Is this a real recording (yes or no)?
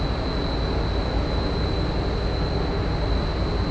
yes